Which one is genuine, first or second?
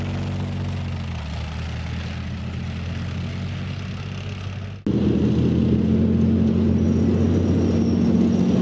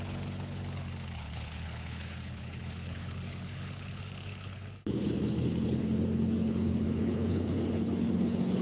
first